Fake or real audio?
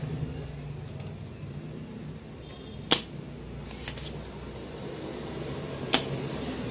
real